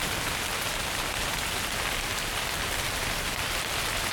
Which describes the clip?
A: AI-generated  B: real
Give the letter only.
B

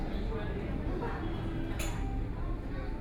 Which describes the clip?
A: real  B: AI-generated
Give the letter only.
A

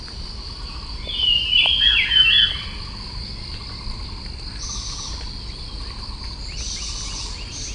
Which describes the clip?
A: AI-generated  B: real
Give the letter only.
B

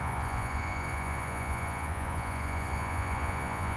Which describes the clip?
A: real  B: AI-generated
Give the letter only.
B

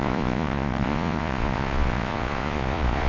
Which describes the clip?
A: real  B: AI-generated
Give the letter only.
B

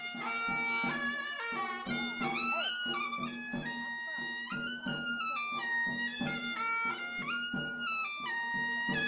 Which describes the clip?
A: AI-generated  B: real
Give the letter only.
B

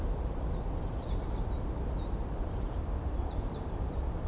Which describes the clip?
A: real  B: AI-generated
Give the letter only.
A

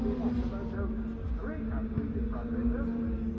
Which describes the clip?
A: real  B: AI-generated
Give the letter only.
A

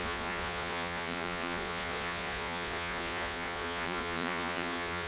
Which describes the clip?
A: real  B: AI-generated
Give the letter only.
B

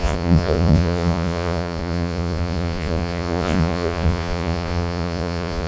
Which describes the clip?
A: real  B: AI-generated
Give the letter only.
B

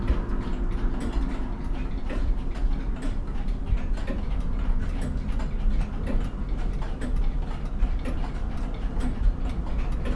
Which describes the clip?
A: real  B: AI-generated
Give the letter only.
A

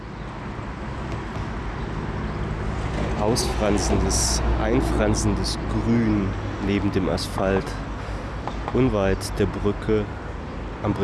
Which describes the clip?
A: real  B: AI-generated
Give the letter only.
A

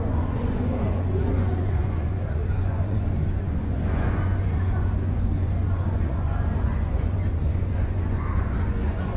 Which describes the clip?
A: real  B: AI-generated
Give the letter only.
B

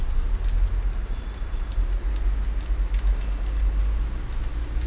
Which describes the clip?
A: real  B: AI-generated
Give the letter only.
A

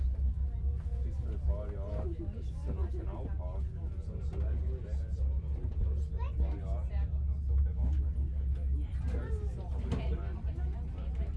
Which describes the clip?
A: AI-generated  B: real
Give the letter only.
B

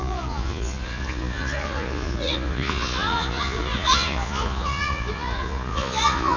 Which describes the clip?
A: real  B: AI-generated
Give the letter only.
B